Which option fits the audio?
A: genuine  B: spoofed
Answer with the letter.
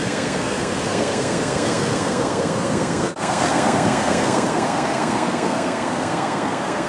B